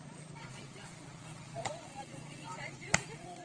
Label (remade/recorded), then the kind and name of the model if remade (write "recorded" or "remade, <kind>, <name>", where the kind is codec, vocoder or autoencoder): remade, vocoder, Vocos